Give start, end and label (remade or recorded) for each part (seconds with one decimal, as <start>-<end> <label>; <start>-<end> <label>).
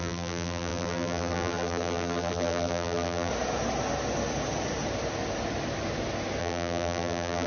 0.0-3.3 remade; 3.3-6.4 recorded; 6.4-7.5 remade